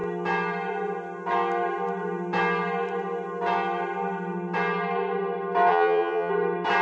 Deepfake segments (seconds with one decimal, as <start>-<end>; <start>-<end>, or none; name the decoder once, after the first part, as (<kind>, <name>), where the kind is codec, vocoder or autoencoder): 5.7-6.3 (vocoder, HiFi-GAN)